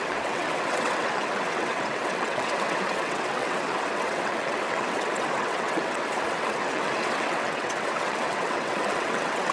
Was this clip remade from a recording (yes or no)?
yes